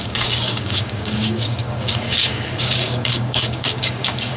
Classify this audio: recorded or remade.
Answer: remade